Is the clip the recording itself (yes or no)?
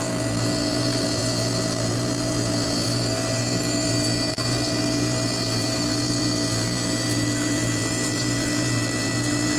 no